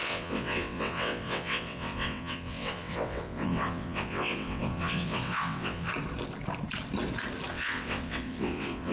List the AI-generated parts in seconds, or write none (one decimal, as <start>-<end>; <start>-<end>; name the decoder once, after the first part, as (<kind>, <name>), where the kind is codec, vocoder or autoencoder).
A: 0.0-5.9 (vocoder, WaveNeXt); 7.5-8.9